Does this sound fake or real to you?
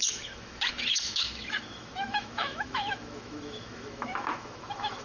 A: fake